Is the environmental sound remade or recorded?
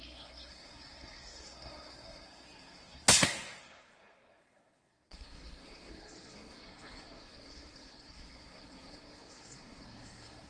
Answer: remade